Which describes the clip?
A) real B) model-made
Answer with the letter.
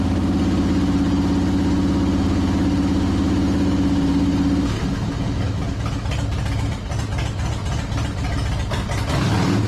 A